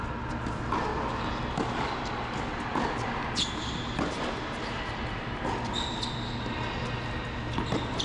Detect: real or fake real